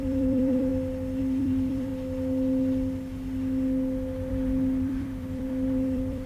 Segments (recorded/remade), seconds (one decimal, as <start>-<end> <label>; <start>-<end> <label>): 0.0-0.7 remade; 0.7-1.2 recorded; 1.2-1.9 remade; 1.9-4.3 recorded; 4.3-6.3 remade